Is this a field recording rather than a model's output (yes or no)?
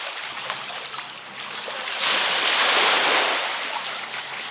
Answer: yes